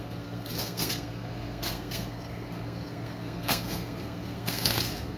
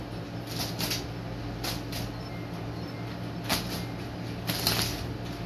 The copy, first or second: first